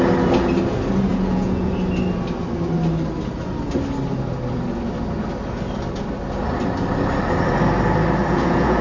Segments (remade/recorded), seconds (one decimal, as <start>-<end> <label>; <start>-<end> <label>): 0.0-1.1 recorded; 1.1-1.7 remade; 1.7-8.2 recorded; 8.2-8.8 remade